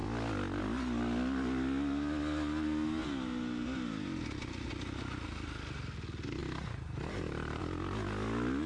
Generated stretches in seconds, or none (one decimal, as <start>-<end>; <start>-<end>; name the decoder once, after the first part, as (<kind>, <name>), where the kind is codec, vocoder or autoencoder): 6.4-7.6 (vocoder, BigVGAN v2)